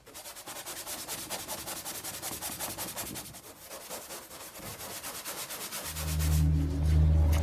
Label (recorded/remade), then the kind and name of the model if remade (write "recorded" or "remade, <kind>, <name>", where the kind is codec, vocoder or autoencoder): recorded